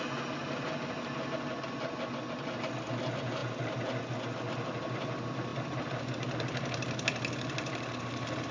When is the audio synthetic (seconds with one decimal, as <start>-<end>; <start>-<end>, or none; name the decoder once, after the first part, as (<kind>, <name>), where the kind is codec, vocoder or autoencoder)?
none